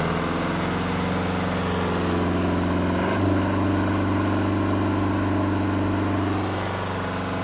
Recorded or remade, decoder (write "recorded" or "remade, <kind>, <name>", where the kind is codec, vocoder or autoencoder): recorded